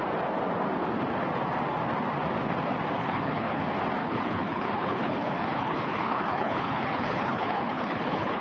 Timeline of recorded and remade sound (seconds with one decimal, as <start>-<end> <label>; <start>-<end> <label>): 0.0-3.0 recorded; 3.0-3.6 remade; 3.6-4.0 recorded; 4.0-8.4 remade